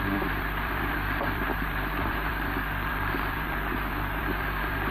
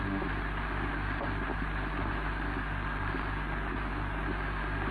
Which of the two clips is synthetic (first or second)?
first